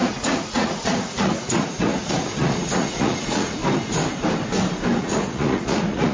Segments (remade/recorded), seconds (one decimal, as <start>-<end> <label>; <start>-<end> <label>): 0.0-3.6 remade; 3.6-5.0 recorded; 5.0-6.1 remade